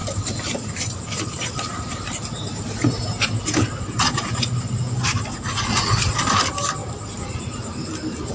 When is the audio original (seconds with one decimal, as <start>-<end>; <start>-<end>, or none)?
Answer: 4.7-5.7; 6.3-8.3